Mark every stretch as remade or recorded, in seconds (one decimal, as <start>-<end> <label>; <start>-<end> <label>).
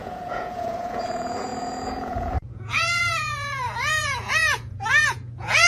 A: 0.0-5.7 remade